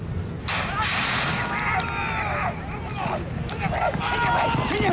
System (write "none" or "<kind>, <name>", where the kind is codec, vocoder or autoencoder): none